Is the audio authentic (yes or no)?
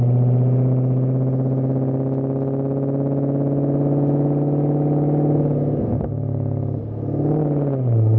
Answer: yes